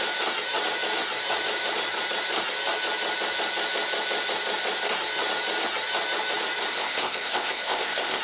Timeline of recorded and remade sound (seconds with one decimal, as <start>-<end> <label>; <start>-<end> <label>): 0.0-6.7 recorded; 6.7-8.2 remade